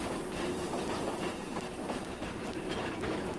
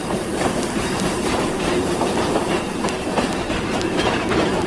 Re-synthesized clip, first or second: second